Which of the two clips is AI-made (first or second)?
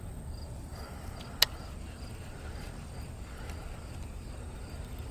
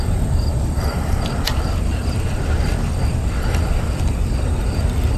second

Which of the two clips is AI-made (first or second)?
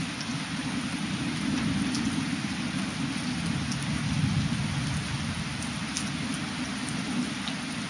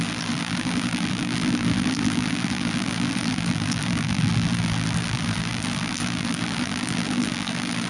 second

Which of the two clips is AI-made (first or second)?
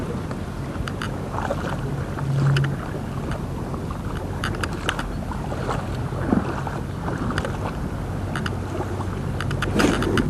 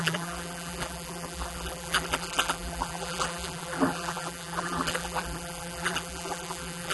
second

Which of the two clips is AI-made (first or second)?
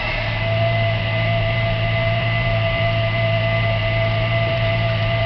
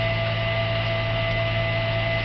first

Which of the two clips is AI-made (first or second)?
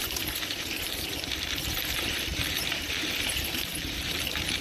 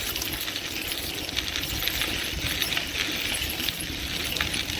first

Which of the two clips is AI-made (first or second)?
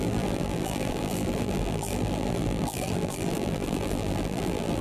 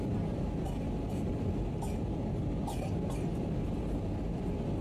first